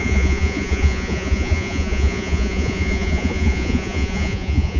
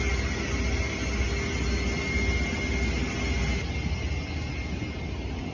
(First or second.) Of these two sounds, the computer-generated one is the first